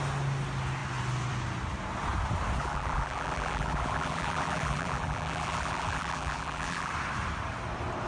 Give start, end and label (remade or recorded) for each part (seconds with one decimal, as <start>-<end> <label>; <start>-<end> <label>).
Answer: 0.0-2.6 recorded; 2.6-6.9 remade; 6.9-8.1 recorded